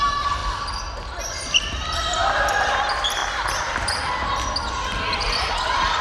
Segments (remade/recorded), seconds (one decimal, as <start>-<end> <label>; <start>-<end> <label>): 0.0-0.4 remade; 0.4-1.2 recorded; 1.2-3.2 remade; 3.2-5.1 recorded; 5.1-6.0 remade